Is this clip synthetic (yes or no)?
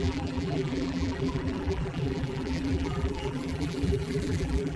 yes